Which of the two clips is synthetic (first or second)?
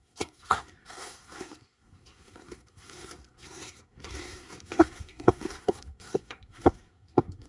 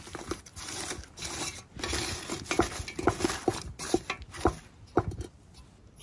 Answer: first